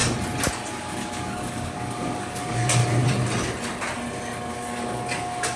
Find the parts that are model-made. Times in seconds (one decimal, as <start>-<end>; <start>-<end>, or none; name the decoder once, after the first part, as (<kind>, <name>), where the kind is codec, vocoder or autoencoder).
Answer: 0.8-2.8 (codec, DAC); 4.5-5.6